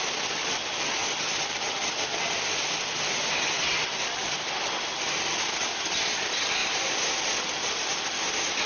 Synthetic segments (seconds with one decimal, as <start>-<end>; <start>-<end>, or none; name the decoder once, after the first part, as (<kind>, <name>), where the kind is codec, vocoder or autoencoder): 1.0-2.3 (vocoder, BigVGAN v2); 6.6-7.1